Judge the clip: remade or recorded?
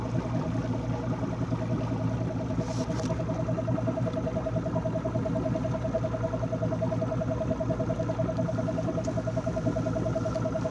recorded